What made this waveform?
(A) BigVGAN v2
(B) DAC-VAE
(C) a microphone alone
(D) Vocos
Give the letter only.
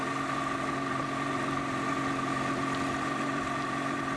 C